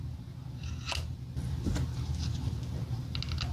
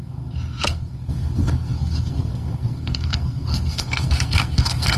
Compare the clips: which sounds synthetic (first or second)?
second